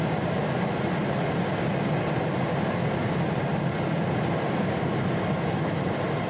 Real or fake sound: real